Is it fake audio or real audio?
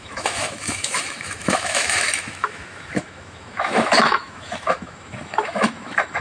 fake